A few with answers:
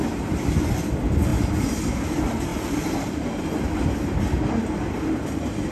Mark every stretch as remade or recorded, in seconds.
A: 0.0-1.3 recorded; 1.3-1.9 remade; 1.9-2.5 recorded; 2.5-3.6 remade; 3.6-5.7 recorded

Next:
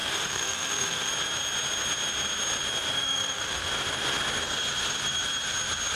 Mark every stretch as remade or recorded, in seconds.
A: 0.0-1.1 remade; 1.1-2.9 recorded; 2.9-3.7 remade; 3.7-6.0 recorded